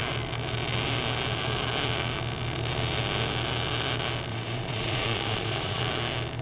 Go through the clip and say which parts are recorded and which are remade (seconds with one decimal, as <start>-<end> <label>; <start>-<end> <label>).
0.0-4.3 recorded; 4.3-5.8 remade; 5.8-6.4 recorded

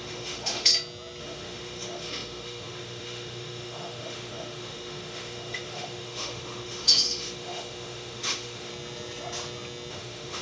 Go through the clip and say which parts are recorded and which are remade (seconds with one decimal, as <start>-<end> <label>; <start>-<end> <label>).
0.0-0.7 remade; 0.7-1.2 recorded; 1.2-8.7 remade; 8.7-9.9 recorded; 9.9-10.4 remade

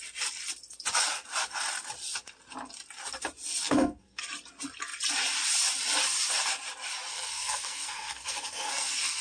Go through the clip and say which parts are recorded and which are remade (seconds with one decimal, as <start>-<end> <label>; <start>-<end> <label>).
0.0-3.6 recorded; 3.6-4.2 remade; 4.2-7.1 recorded; 7.1-9.2 remade

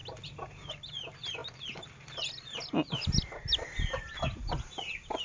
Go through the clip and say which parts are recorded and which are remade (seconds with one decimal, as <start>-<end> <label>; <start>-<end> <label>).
0.0-5.2 recorded